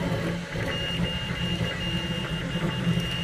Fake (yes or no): no